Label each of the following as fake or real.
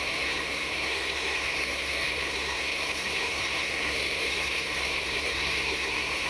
fake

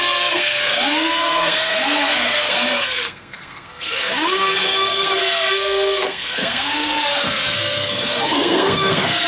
fake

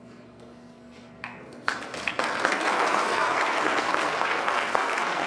fake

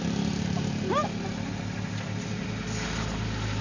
real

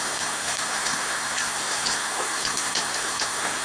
fake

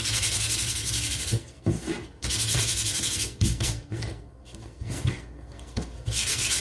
fake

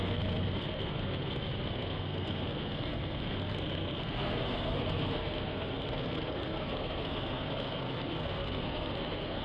fake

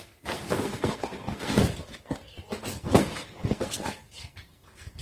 fake